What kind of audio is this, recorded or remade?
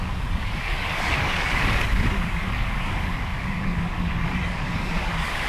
remade